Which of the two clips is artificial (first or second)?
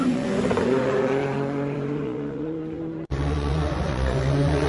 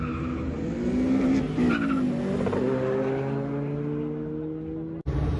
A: first